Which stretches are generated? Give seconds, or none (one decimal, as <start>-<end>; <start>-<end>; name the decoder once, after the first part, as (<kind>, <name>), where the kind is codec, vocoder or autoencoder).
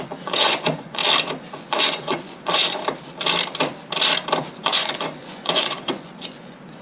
0.0-1.0 (vocoder, Vocos); 1.5-2.8; 4.6-6.8